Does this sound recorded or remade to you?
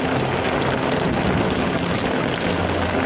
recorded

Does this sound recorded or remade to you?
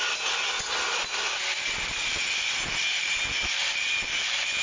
recorded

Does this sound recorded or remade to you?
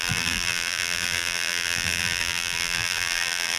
remade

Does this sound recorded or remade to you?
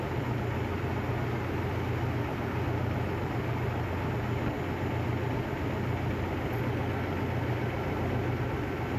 recorded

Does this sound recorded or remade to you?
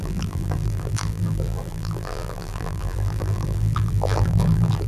remade